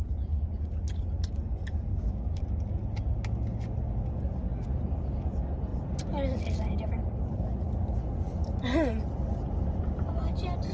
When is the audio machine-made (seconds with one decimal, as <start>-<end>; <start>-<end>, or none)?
1.9-2.4